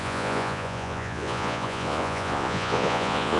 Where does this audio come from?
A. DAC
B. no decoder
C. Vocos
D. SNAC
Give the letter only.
C